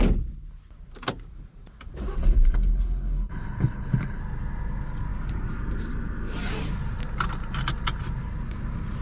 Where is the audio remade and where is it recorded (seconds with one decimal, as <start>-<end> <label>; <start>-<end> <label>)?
0.0-2.2 recorded; 2.2-4.2 remade; 4.2-9.0 recorded